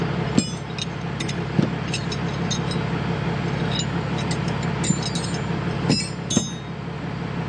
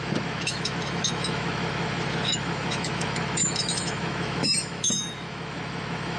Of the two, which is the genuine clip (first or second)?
first